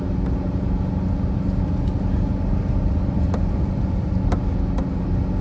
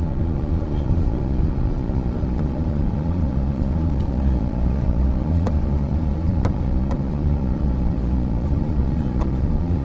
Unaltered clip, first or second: first